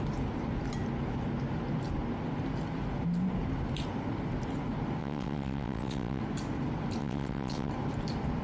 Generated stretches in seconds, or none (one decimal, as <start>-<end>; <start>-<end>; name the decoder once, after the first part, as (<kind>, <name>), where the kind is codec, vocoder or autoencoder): 5.0-6.2 (vocoder, WaveNeXt); 7.0-7.7

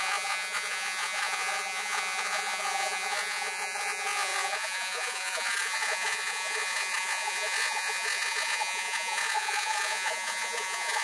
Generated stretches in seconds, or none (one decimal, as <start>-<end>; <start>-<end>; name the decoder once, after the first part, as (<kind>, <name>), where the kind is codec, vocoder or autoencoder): 0.0-11.0 (vocoder, Vocos)

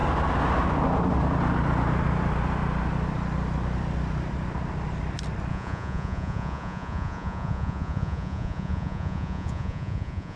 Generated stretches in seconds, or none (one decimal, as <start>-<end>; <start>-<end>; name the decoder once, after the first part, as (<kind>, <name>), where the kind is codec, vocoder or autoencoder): 5.5-10.4 (vocoder, Vocos)

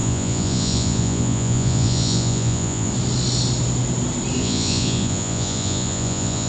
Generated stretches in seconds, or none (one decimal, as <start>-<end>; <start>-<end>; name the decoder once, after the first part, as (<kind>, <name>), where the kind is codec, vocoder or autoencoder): 0.0-2.9 (vocoder, Vocos); 4.4-6.5

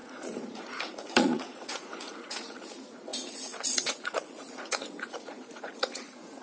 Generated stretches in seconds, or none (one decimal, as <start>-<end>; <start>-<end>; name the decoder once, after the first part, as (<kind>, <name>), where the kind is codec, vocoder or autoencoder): 0.0-6.4 (vocoder, Vocos)

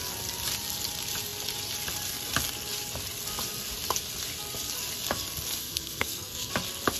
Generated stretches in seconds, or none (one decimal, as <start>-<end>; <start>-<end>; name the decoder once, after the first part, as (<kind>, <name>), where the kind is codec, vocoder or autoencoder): 5.6-6.5 (codec, SNAC)